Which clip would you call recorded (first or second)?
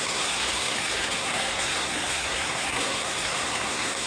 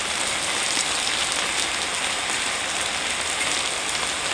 second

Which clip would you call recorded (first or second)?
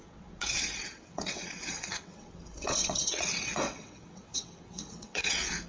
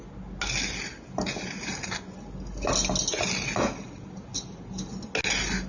second